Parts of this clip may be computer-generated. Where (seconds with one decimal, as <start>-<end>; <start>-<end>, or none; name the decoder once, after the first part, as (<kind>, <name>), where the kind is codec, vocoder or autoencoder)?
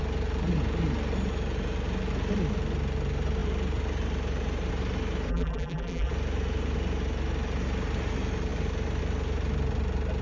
5.3-6.1 (vocoder, BigVGAN v2)